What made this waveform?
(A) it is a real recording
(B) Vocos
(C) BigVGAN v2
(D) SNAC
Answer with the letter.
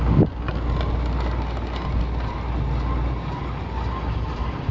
A